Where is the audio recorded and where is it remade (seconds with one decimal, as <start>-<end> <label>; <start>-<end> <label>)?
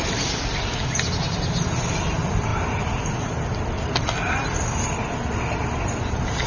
0.0-6.5 recorded